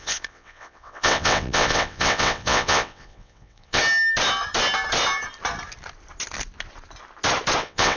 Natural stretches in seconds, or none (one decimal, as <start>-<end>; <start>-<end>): 3.8-7.6